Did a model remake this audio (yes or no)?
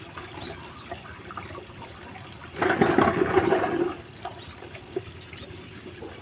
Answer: no